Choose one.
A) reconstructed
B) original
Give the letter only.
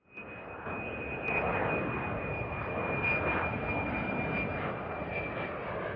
B